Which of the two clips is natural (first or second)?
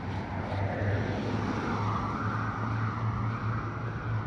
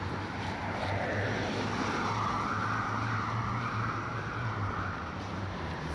first